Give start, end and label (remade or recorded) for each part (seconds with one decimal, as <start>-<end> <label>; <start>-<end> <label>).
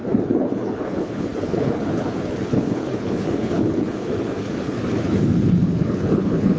0.0-6.6 remade